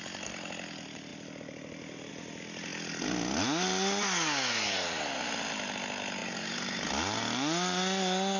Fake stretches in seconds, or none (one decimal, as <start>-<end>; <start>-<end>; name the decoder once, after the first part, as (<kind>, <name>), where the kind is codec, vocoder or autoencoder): 6.2-6.9 (vocoder, BigVGAN v2)